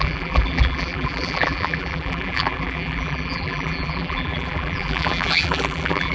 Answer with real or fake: fake